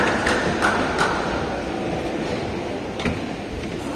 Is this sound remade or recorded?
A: recorded